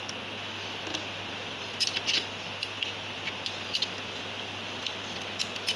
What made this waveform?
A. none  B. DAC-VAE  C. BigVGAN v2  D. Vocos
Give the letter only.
A